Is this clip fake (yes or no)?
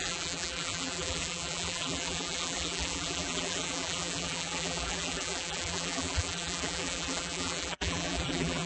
yes